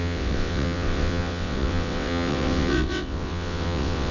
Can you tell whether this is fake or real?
fake